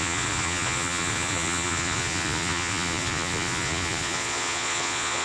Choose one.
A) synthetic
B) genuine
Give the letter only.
A